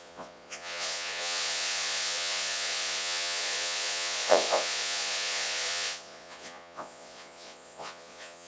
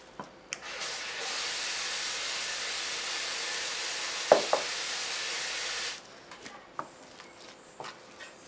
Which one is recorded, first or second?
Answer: second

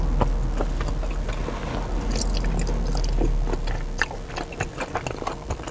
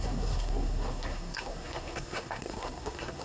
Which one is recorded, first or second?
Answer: first